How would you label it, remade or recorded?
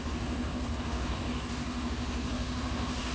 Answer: remade